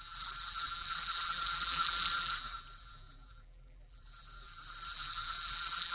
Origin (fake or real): fake